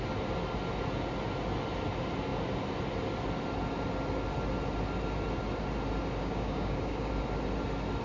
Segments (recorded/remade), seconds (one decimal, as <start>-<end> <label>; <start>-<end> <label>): 0.0-6.2 recorded; 6.2-7.1 remade; 7.1-8.0 recorded